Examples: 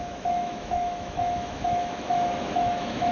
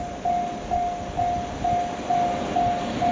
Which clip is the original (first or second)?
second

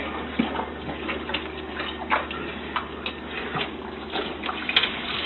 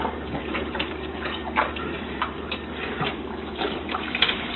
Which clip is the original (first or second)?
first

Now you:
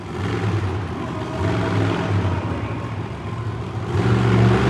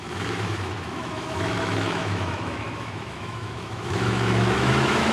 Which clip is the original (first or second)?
first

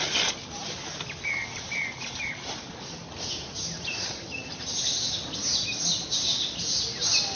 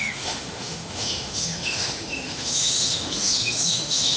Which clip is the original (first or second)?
first